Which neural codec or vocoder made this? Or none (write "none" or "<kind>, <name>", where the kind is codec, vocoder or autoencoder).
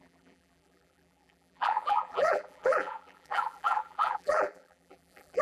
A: vocoder, BigVGAN v2